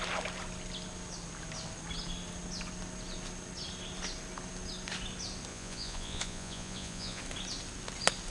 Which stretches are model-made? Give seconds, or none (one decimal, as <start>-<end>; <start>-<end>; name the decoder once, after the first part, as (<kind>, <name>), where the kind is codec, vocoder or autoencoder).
5.5-7.2 (vocoder, Vocos)